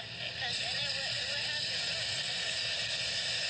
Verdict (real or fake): real